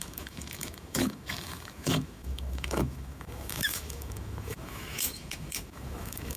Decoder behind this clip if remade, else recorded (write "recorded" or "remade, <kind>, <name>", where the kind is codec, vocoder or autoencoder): remade, autoencoder, DAC-VAE